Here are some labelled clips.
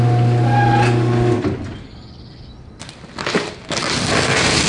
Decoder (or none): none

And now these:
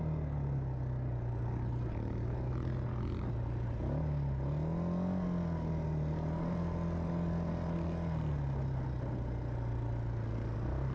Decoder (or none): none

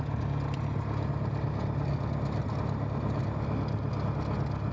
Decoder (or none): none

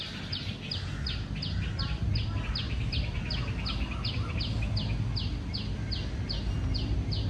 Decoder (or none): none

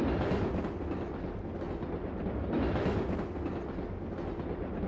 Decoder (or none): none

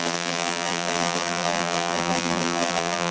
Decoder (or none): vocoder, BigVGAN v2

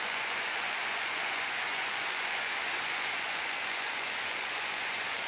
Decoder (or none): vocoder, Vocos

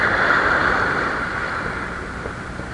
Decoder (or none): vocoder, BigVGAN v2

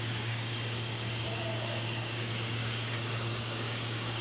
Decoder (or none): codec, DAC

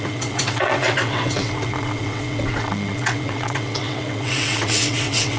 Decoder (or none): vocoder, WaveNeXt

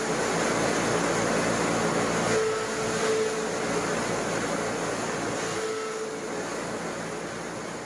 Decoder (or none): none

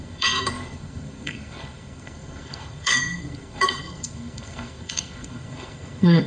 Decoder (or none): codec, SNAC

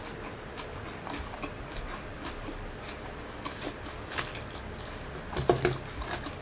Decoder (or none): none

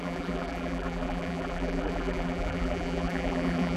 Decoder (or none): vocoder, BigVGAN v2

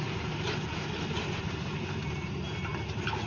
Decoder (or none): none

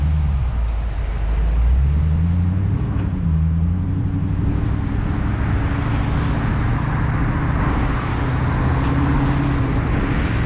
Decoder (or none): none